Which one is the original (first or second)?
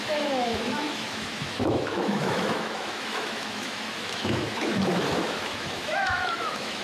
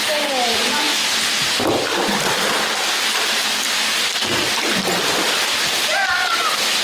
second